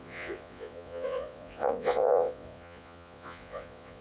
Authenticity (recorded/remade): remade